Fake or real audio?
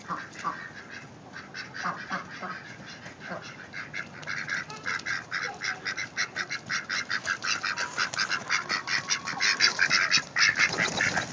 real